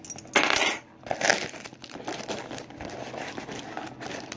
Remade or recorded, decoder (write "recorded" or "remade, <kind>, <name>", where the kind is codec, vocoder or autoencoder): recorded